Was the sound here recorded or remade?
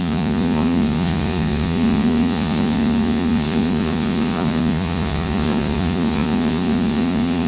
remade